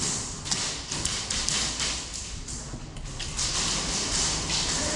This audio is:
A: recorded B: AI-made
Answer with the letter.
A